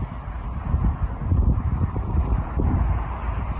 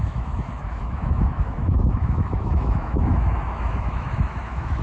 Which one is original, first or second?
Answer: first